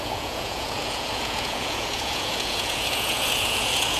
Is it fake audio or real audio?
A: fake